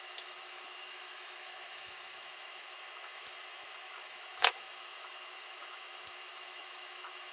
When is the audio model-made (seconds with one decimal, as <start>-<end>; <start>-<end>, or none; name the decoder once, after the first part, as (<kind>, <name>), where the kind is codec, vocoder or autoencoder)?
0.0-7.3 (autoencoder, DAC-VAE)